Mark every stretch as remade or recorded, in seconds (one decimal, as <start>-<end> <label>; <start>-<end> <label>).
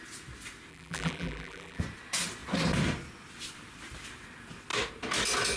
0.0-0.7 recorded; 0.7-1.8 remade; 1.8-5.6 recorded